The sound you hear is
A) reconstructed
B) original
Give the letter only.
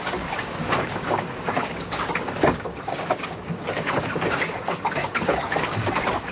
A